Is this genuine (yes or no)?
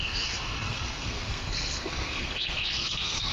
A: no